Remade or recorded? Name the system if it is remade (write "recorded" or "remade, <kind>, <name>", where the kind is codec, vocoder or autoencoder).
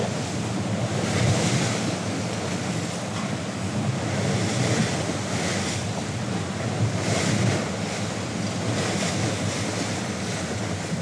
recorded